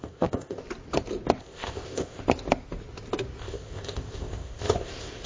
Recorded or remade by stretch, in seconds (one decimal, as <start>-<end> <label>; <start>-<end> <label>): 0.0-0.6 remade; 0.6-1.4 recorded; 1.4-2.2 remade; 2.2-3.4 recorded; 3.4-5.3 remade